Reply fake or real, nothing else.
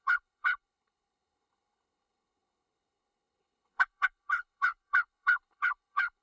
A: fake